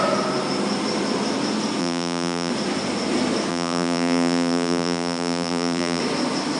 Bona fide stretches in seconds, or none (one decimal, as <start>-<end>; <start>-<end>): 0.0-1.8; 2.5-3.5; 6.0-6.6